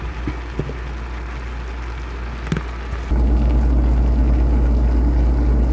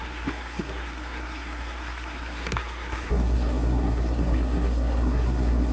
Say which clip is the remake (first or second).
second